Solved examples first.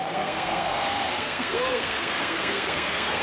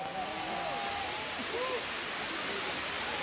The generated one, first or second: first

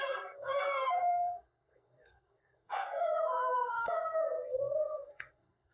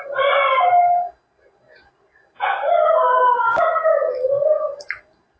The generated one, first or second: first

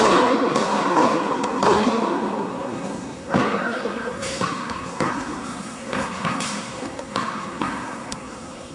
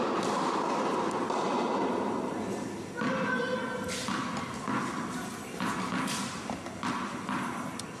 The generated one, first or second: first